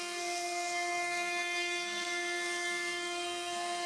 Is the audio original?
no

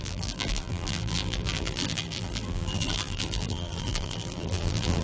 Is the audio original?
no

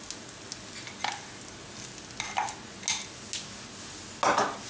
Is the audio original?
yes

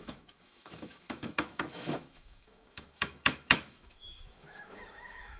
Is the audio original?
no